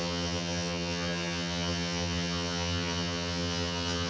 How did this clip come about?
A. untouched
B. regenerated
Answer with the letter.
B